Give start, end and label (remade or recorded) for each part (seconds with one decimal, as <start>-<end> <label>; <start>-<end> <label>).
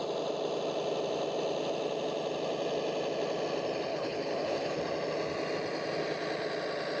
0.0-3.9 recorded; 3.9-4.8 remade; 4.8-7.0 recorded